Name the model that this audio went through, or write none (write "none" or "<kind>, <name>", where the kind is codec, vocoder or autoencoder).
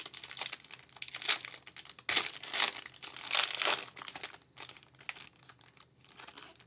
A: none